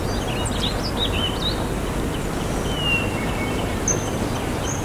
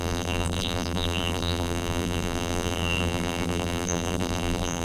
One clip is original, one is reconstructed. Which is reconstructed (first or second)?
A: second